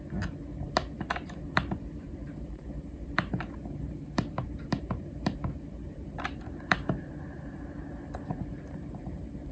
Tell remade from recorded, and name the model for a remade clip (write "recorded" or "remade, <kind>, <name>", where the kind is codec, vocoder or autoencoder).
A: remade, vocoder, BigVGAN v2